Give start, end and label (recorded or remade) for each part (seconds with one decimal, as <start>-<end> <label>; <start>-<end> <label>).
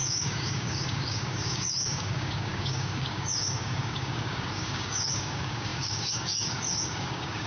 0.0-7.5 remade